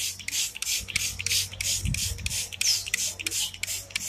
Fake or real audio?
real